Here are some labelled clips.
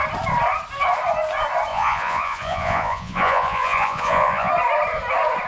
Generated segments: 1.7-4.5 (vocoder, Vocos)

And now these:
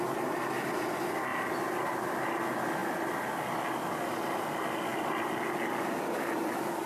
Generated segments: 1.3-2.4 (vocoder, BigVGAN v2); 2.8-3.8

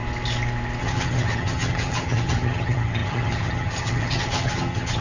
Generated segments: 0.8-5.0 (vocoder, HiFi-GAN)

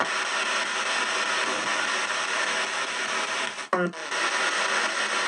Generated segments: 1.7-2.3 (vocoder, BigVGAN v2); 4.0-4.6

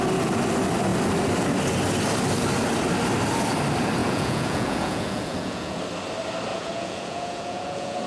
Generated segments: 4.0-5.8 (vocoder, Vocos); 6.5-8.1

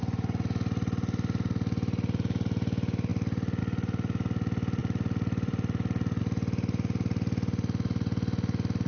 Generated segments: 3.1-3.6 (vocoder, BigVGAN v2); 4.8-6.2

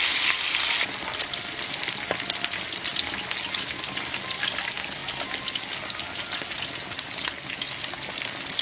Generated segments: none